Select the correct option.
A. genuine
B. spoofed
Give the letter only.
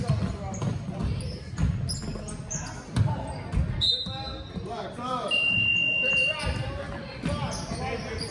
A